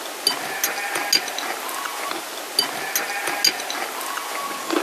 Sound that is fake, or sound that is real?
real